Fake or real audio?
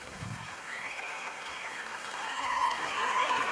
fake